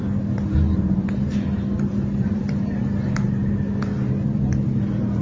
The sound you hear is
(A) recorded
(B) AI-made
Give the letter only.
A